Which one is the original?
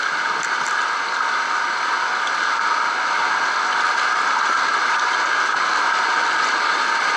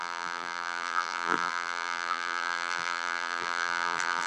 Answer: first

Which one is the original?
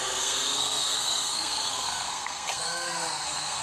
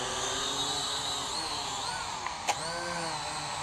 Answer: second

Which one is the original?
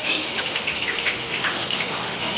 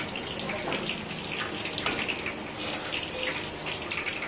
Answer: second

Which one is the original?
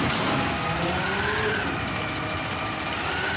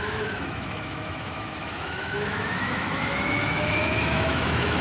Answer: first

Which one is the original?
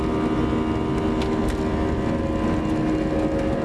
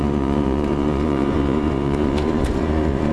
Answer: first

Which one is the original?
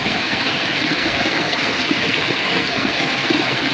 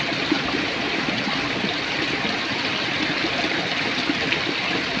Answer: second